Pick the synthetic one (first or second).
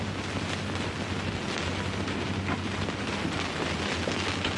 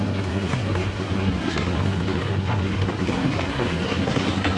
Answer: second